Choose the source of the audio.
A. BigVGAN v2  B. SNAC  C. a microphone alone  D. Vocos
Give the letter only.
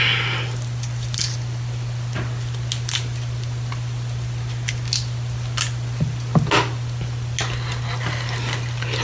C